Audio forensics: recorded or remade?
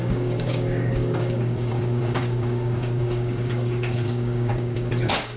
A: remade